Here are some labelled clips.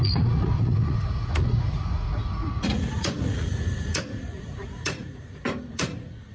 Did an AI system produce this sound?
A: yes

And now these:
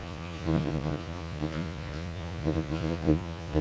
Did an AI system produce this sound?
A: yes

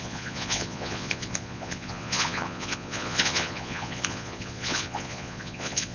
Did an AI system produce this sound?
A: yes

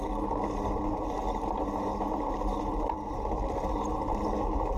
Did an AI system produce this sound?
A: no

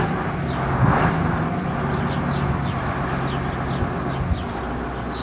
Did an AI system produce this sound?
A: no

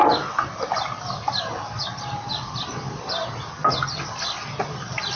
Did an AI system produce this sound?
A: no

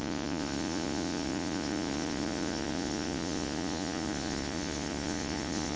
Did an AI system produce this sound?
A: yes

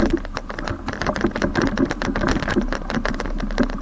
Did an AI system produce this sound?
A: no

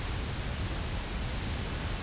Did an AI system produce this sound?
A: no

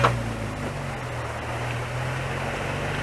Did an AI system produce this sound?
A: no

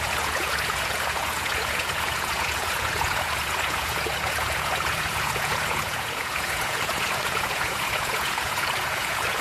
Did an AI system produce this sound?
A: yes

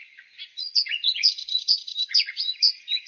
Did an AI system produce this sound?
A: yes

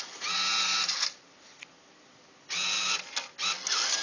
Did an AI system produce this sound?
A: no